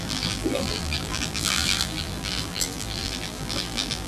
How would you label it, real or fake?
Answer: fake